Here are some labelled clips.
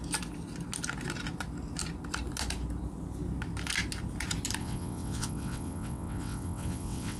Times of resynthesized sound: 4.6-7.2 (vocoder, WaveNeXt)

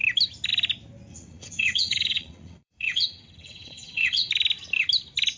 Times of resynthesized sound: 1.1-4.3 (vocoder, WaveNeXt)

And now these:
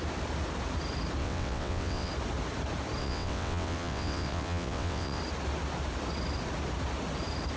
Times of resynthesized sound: 1.2-2.1 (vocoder, WaveNeXt); 3.0-5.2

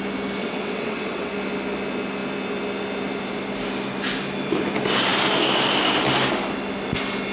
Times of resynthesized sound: 0.4-1.3 (vocoder, WaveNeXt)